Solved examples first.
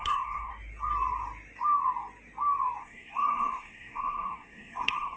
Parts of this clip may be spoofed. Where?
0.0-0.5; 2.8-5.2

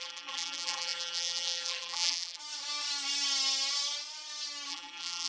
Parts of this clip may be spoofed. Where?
0.0-2.4; 4.7-5.3

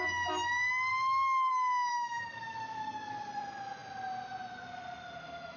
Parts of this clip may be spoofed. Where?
0.9-1.5; 1.9-3.3

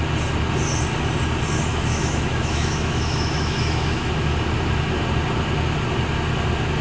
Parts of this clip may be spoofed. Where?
1.7-4.1

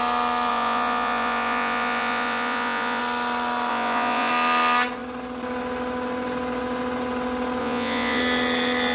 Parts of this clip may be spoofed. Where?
0.5-3.0; 3.7-4.3; 7.6-8.2

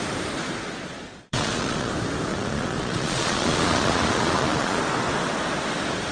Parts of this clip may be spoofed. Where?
0.9-1.9; 2.3-4.8

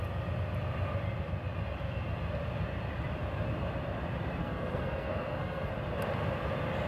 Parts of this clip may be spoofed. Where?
4.4-5.7